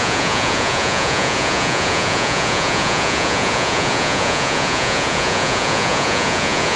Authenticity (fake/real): fake